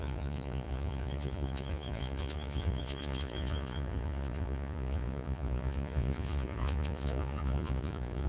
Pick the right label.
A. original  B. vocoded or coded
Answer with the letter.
B